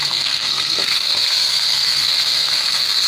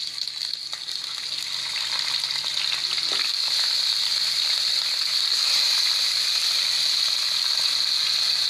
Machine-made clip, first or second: first